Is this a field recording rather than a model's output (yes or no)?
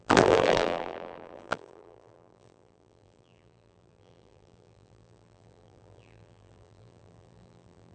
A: no